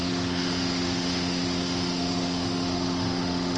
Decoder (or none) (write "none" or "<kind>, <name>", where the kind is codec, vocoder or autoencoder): autoencoder, DAC-VAE